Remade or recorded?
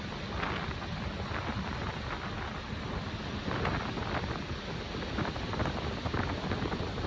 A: recorded